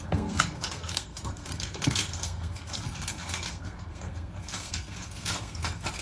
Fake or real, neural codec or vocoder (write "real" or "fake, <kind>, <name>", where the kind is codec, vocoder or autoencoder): fake, codec, SNAC